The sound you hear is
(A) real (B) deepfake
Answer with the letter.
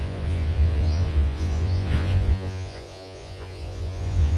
B